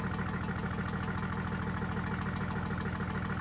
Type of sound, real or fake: real